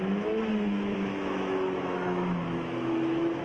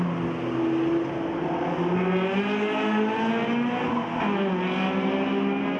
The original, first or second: second